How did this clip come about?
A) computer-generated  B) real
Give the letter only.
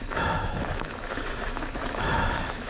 A